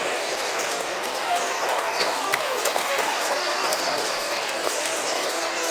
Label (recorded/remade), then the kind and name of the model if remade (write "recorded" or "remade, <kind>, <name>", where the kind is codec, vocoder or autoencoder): remade, codec, DAC